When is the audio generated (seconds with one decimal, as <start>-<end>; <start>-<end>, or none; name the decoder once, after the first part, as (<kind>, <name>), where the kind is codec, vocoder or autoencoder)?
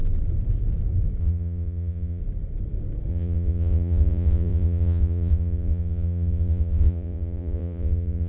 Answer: 1.2-2.2 (vocoder, Vocos); 3.1-8.3